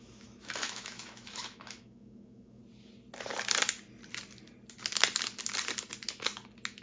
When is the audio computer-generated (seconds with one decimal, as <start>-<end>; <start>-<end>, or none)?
0.0-2.6